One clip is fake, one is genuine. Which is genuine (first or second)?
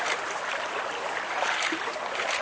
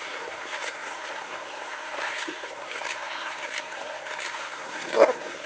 first